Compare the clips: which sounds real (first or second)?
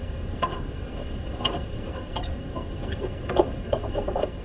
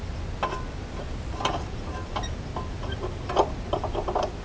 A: second